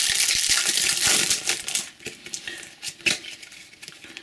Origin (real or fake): fake